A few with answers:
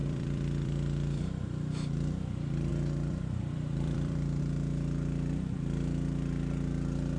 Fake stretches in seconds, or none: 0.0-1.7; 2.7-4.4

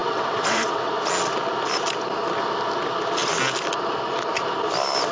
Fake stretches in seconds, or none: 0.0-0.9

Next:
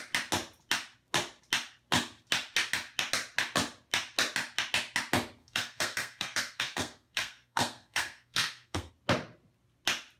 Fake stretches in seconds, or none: 5.4-8.9

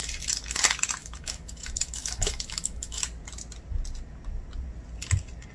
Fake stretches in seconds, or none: 1.0-3.0